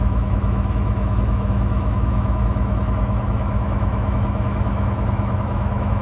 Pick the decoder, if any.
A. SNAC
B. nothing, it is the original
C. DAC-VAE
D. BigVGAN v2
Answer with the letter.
C